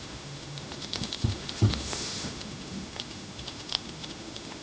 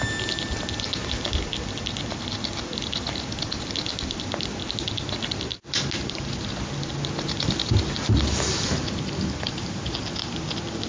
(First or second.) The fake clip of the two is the first